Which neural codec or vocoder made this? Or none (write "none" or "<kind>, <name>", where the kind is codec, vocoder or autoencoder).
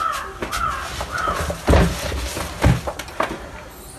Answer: none